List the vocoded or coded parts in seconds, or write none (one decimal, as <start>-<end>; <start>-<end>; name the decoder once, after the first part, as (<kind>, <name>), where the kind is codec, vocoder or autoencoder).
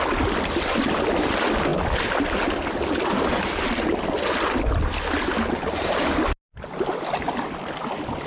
none